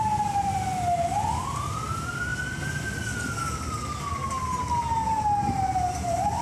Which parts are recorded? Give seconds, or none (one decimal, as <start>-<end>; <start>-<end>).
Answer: 0.0-6.4